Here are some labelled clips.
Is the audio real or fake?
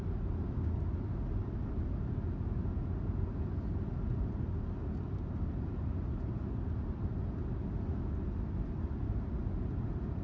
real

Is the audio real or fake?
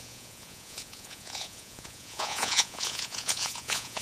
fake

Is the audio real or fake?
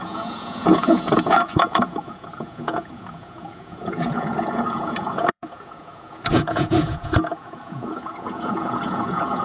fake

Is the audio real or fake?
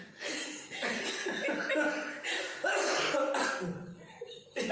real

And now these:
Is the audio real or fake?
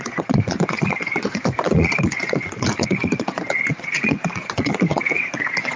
fake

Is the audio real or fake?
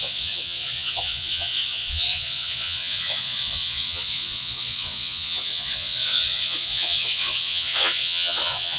fake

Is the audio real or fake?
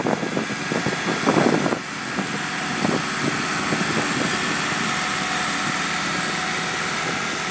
real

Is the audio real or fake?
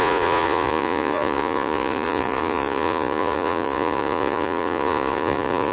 fake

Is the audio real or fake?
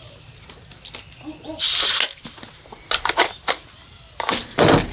real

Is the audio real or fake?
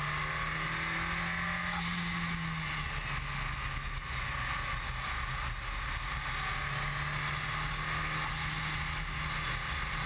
real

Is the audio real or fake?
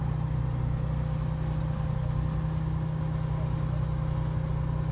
real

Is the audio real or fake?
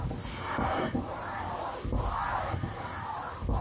real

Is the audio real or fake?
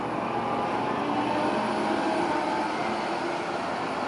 real